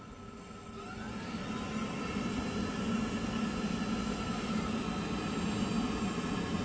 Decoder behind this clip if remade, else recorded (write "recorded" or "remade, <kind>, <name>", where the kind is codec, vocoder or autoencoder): recorded